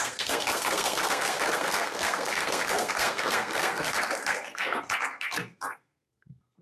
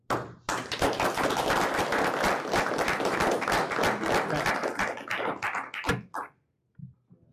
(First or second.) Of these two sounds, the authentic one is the second